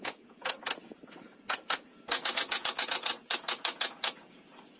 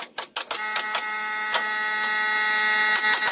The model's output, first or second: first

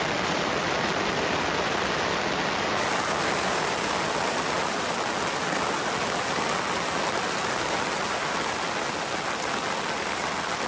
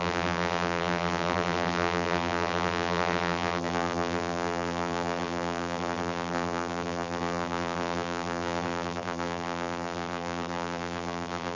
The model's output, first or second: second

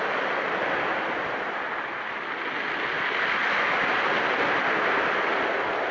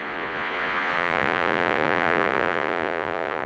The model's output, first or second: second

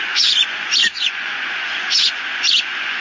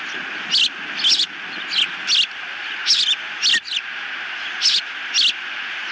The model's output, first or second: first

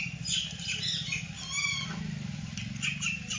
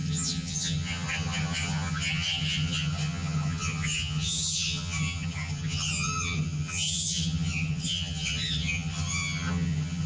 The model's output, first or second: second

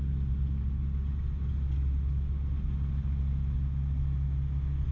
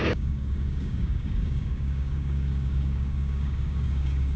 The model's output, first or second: second